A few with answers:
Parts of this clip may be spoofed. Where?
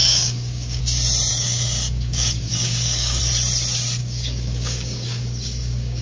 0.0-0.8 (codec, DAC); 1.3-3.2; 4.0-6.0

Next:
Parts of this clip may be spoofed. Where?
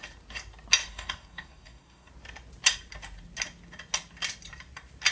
0.8-2.1 (codec, DAC)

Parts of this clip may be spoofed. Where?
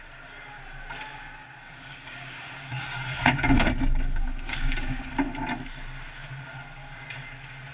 1.1-5.1 (codec, DAC)